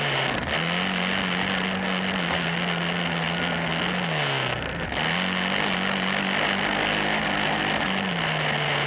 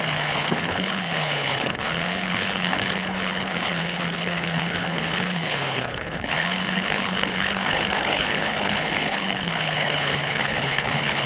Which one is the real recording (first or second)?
first